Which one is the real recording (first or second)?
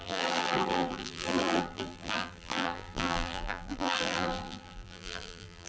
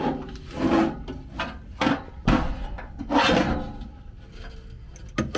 second